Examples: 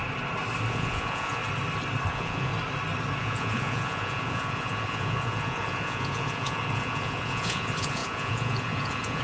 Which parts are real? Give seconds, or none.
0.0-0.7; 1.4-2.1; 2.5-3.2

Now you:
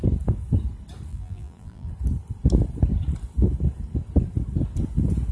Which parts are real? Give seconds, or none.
0.0-1.1; 1.9-5.3

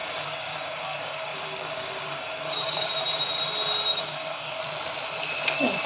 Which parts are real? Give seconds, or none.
2.9-3.9; 4.6-5.9

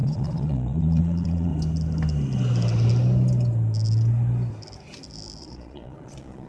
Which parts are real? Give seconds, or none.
1.5-5.4

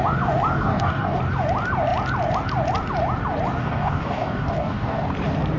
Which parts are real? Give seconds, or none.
0.0-0.5; 1.2-3.6; 5.1-5.6